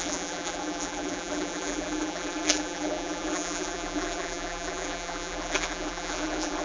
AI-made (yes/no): yes